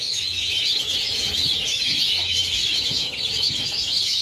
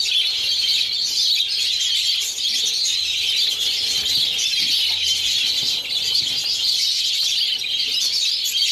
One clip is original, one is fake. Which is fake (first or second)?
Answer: first